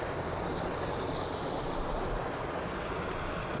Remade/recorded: recorded